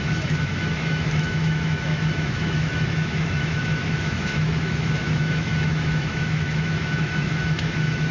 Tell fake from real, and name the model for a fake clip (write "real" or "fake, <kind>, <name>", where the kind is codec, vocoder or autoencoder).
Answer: fake, autoencoder, DAC-VAE